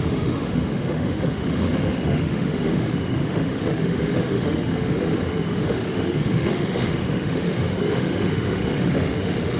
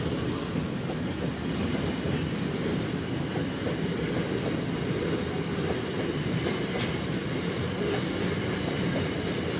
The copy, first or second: first